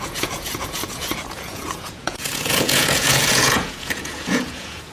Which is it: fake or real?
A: fake